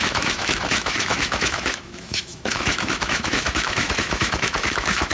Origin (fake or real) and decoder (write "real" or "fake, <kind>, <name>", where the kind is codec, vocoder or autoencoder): fake, autoencoder, DAC-VAE